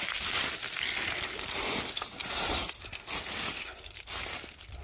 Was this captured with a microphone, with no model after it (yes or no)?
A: yes